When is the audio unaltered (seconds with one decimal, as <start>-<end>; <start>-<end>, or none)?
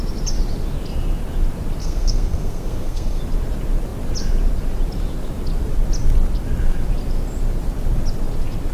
0.0-1.8; 3.2-8.7